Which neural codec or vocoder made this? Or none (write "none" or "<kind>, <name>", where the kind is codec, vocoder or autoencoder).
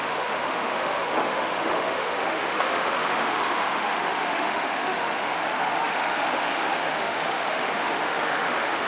autoencoder, DAC-VAE